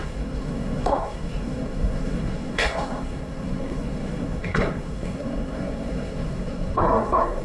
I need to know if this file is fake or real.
fake